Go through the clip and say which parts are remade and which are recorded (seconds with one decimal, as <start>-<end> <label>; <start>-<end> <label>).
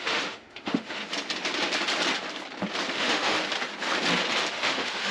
0.0-1.0 remade; 1.0-2.9 recorded; 2.9-3.4 remade; 3.4-4.5 recorded; 4.5-5.1 remade